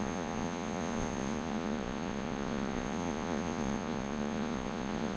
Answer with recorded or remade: remade